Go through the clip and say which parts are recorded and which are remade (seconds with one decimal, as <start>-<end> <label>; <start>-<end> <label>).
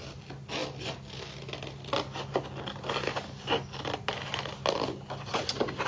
0.0-5.9 recorded